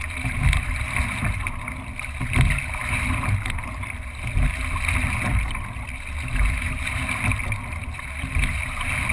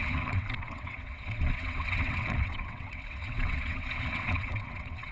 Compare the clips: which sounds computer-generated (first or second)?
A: second